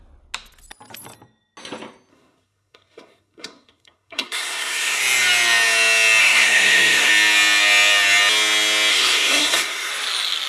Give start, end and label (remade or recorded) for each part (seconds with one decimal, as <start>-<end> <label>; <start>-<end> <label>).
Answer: 0.0-2.1 recorded; 2.1-5.0 remade; 5.0-6.2 recorded; 6.2-7.1 remade; 7.1-8.9 recorded; 8.9-9.9 remade; 9.9-10.5 recorded